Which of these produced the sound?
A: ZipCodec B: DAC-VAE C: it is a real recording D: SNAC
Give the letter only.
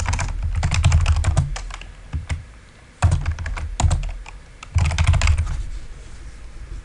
C